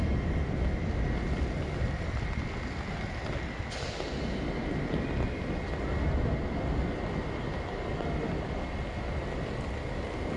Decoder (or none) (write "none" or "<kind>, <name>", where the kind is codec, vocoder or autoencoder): none